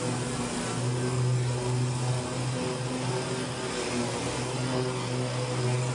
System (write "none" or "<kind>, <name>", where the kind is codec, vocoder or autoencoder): none